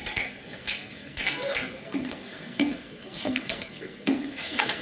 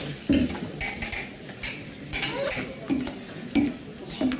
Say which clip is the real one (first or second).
second